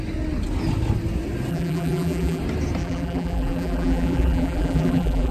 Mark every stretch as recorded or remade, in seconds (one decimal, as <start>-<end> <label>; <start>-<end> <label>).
0.0-1.5 recorded; 1.5-2.4 remade; 2.4-2.8 recorded; 2.8-5.3 remade